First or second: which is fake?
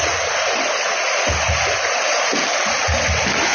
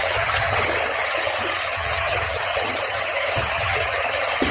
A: second